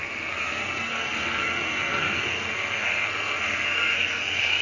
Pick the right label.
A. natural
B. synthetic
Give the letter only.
B